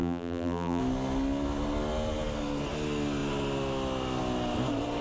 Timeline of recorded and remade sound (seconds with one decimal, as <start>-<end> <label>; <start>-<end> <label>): 0.0-0.8 remade; 0.8-5.0 recorded